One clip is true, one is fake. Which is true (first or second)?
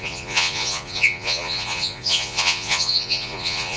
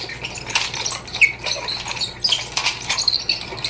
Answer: second